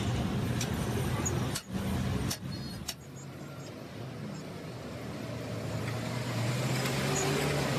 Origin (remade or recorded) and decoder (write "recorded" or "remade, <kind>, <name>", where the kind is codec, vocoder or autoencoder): recorded